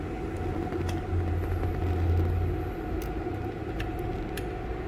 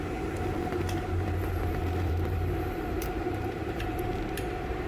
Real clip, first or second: first